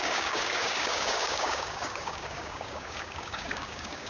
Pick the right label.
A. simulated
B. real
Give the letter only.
A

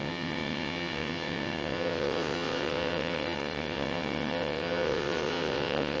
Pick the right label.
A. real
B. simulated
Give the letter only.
B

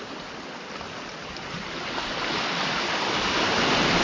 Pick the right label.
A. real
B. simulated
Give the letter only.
A